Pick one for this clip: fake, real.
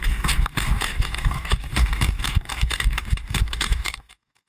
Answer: fake